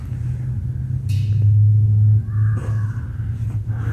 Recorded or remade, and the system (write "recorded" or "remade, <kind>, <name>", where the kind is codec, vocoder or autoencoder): recorded